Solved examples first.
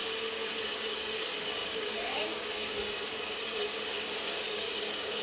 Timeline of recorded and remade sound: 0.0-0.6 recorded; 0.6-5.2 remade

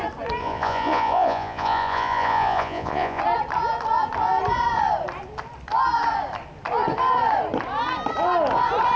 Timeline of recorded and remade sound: 0.0-0.4 recorded; 0.4-3.2 remade; 3.2-9.0 recorded

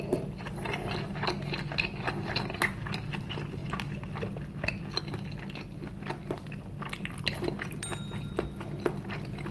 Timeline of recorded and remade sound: 0.0-9.5 recorded

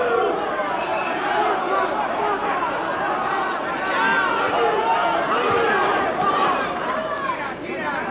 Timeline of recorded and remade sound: 0.0-0.9 recorded; 0.9-3.7 remade; 3.7-5.8 recorded; 5.8-7.3 remade; 7.3-8.1 recorded